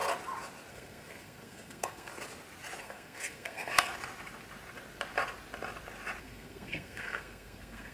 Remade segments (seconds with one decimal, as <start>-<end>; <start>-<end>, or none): 0.7-2.1; 2.8-3.9; 6.2-7.9